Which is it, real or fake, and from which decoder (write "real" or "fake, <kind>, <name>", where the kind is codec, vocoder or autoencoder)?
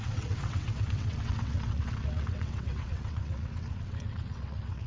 fake, vocoder, WaveNeXt